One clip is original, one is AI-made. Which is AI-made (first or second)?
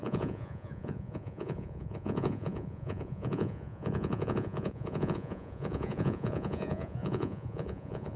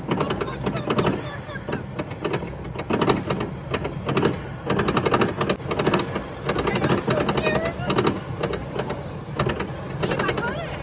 first